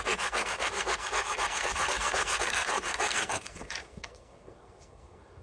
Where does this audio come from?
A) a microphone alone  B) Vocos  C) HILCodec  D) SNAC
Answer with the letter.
D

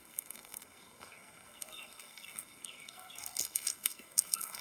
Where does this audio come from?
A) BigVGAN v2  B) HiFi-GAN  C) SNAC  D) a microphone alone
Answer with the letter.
C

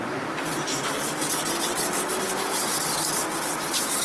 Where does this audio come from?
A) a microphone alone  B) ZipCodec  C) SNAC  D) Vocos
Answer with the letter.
A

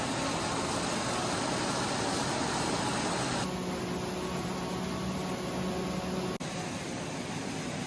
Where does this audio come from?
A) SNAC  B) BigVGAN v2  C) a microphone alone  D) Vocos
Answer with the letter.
C